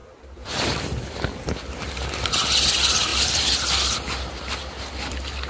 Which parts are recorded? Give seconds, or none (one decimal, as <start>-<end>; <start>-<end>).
0.0-3.1; 5.0-5.5